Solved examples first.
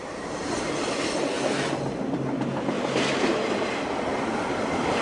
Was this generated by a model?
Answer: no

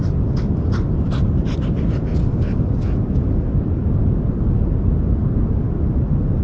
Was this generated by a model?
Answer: no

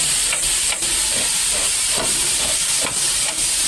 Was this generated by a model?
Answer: yes